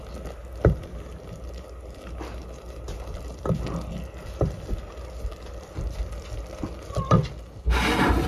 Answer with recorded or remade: recorded